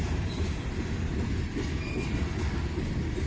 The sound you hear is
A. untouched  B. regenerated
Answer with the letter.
A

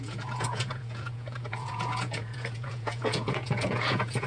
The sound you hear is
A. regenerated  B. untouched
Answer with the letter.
A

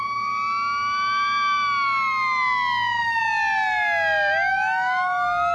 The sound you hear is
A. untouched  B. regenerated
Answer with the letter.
A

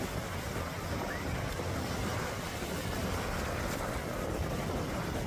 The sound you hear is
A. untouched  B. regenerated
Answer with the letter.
A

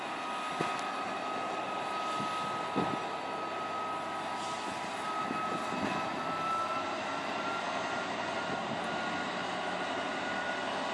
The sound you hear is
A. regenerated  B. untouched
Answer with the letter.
B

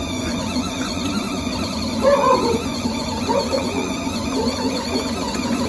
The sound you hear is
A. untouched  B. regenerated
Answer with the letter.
B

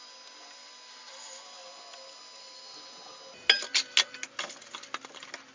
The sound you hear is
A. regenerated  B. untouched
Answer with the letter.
B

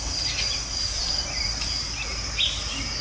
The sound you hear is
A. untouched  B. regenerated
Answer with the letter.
A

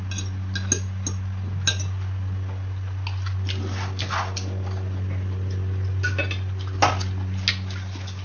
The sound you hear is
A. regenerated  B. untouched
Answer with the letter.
B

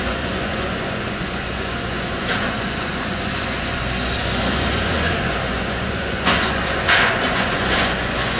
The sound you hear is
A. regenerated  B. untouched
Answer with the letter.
A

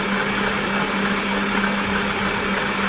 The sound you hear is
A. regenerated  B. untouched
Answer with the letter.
B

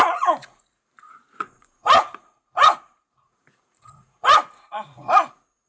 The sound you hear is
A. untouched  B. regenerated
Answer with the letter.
B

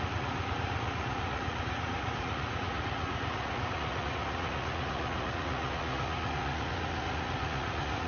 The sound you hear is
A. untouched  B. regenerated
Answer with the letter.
B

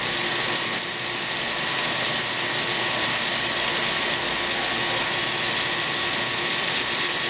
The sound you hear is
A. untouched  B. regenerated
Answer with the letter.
A